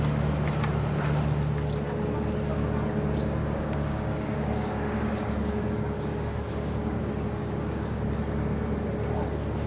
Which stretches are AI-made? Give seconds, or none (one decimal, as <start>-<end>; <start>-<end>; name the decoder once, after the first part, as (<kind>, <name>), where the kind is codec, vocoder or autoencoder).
3.4-8.1 (codec, DAC)